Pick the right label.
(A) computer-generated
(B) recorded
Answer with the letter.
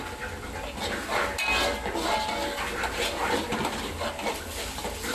B